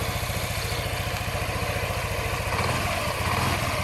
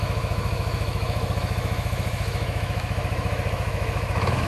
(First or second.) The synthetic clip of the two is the second